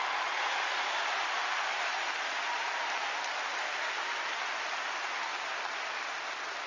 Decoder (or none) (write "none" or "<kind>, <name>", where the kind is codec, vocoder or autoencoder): none